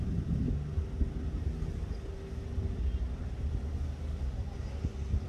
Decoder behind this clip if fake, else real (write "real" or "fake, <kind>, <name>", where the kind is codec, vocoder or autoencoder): real